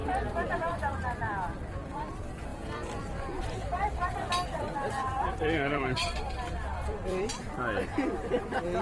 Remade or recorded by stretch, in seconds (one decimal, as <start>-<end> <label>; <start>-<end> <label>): 0.0-2.1 remade; 2.1-2.5 recorded; 2.5-7.4 remade; 7.4-8.8 recorded